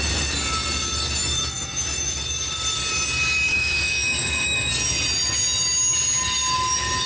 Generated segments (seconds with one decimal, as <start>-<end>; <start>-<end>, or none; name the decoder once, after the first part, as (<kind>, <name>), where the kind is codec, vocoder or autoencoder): 1.2-2.2 (autoencoder, DAC-VAE); 3.5-4.7